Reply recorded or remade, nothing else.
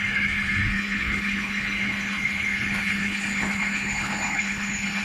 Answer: remade